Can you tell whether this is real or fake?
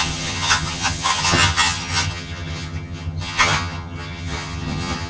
fake